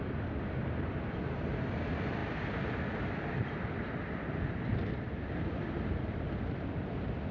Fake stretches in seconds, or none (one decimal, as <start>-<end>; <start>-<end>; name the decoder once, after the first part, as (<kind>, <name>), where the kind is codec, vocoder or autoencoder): 2.2-6.4 (vocoder, BigVGAN v2)